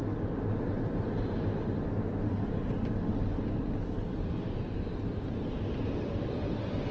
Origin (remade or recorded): recorded